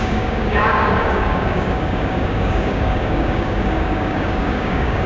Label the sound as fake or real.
fake